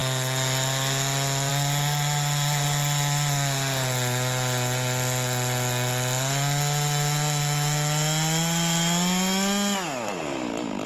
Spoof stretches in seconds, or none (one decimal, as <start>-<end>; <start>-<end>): none